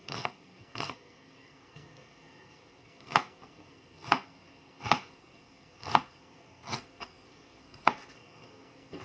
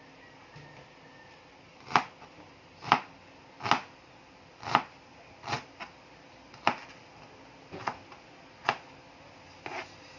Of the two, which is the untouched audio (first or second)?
second